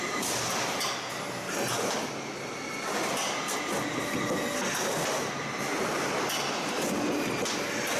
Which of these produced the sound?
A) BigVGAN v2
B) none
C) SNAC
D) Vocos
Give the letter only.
B